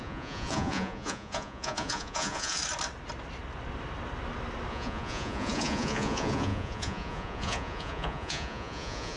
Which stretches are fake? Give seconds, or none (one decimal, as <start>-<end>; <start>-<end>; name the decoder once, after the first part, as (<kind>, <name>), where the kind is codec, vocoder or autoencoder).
0.0-2.6 (vocoder, Vocos); 4.7-9.2